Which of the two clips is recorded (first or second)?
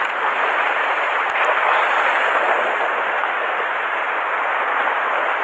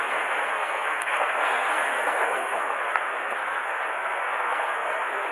first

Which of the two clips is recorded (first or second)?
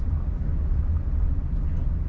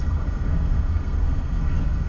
first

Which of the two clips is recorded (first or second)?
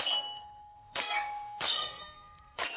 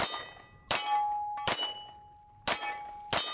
second